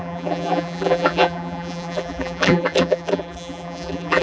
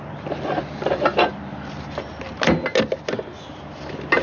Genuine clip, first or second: second